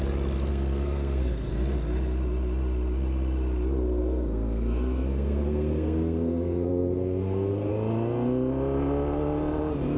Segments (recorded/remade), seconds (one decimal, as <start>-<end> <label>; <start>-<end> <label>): 0.0-0.5 recorded; 0.5-1.5 remade; 1.5-4.0 recorded; 4.0-7.7 remade; 7.7-10.0 recorded